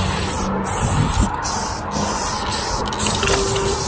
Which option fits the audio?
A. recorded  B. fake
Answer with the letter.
A